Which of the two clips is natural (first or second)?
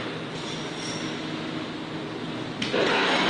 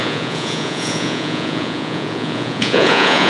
first